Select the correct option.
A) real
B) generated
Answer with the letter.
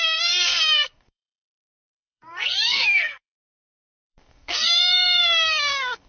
B